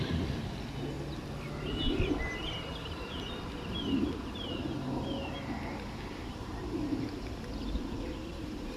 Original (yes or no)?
yes